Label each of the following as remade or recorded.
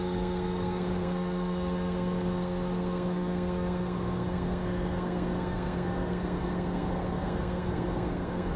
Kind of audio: remade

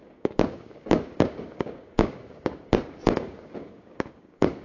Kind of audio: remade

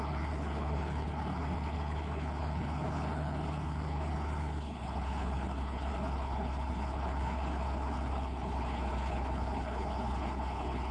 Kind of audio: remade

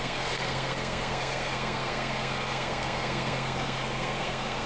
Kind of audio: remade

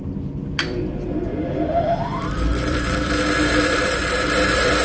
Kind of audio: remade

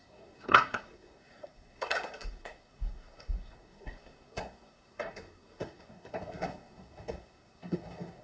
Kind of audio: remade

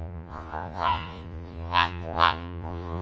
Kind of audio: remade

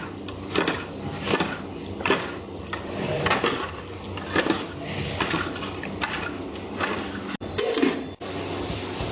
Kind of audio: recorded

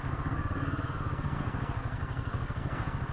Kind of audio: remade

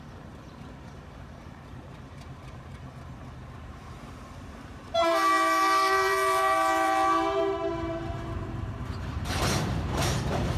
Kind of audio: remade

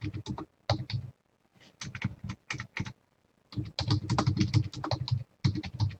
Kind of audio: recorded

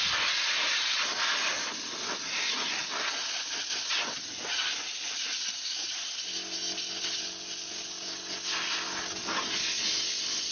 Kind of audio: recorded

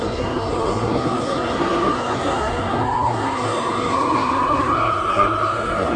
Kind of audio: remade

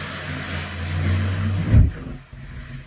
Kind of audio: recorded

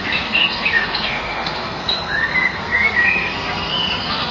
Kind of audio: remade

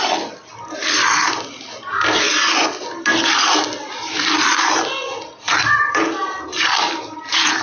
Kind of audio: recorded